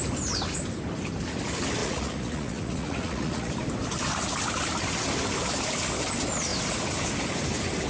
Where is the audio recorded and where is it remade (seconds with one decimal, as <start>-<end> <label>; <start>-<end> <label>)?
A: 0.0-1.8 recorded; 1.8-3.5 remade; 3.5-7.9 recorded